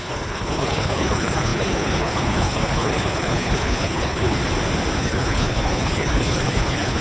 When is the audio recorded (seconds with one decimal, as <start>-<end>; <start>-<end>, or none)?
4.4-5.0